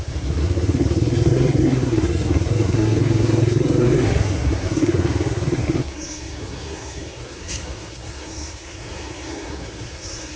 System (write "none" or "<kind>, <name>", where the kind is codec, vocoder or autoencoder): codec, SNAC